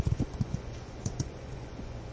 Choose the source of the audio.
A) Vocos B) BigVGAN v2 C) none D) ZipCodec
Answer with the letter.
A